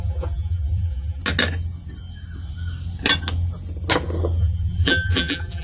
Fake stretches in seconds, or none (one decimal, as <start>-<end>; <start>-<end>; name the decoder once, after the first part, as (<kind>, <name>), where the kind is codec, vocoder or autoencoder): 0.0-1.2 (vocoder, BigVGAN v2); 4.4-5.6